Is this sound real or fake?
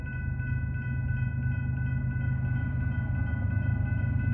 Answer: real